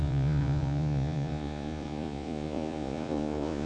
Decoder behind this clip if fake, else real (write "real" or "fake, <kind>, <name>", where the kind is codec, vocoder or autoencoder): fake, vocoder, Vocos